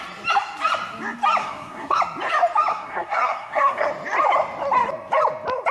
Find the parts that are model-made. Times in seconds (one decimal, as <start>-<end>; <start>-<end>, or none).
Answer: 1.4-2.0; 2.7-3.9